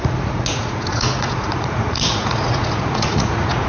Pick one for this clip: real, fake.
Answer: fake